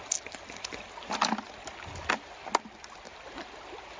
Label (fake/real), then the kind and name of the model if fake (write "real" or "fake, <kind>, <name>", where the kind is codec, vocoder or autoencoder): real